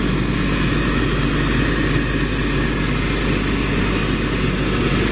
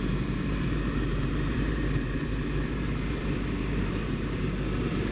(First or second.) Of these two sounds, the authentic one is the first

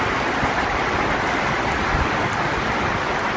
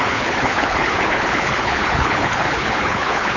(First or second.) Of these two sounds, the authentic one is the first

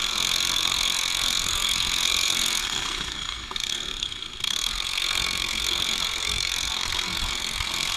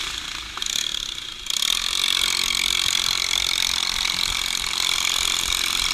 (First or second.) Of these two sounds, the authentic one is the second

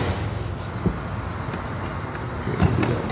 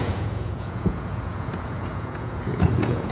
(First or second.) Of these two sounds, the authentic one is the first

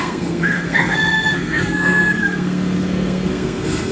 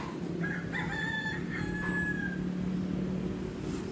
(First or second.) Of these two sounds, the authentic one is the second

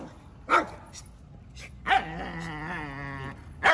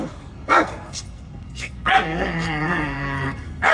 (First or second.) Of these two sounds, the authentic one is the first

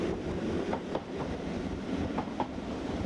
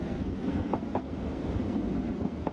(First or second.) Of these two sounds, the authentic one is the first